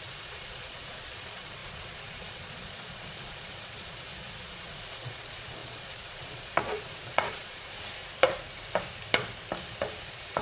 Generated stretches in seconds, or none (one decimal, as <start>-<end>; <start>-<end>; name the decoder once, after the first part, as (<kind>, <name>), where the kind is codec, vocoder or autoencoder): 0.0-8.0 (vocoder, Vocos); 10.0-10.4

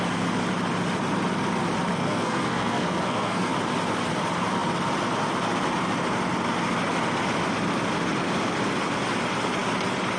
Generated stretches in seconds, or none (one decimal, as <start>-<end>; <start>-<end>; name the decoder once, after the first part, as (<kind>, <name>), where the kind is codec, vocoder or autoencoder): 1.9-3.5 (codec, SNAC)

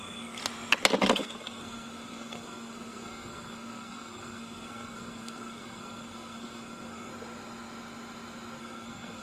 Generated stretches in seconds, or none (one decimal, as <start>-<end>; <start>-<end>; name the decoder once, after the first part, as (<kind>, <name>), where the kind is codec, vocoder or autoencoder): 0.0-0.4 (codec, SNAC); 1.1-7.1; 8.6-9.2